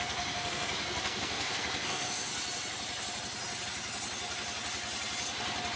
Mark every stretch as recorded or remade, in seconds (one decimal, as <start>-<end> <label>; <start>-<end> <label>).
0.0-2.3 remade; 2.3-5.8 recorded